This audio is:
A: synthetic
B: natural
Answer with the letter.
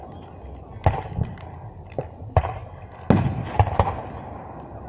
B